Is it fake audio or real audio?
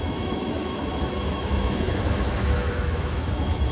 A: fake